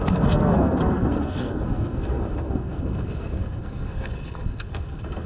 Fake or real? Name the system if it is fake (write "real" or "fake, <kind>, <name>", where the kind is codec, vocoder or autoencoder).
fake, codec, SNAC